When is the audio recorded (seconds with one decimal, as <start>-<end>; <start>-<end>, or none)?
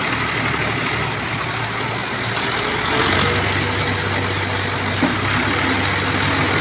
0.0-6.6